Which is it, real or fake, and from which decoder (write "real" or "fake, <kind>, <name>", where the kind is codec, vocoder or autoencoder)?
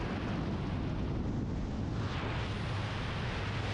real